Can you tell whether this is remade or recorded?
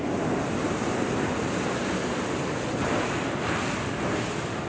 recorded